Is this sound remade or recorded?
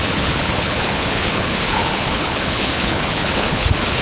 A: remade